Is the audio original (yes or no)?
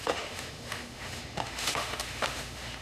no